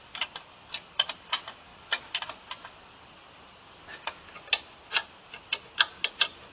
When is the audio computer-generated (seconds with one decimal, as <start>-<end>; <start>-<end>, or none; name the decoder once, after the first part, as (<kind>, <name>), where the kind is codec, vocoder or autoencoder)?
none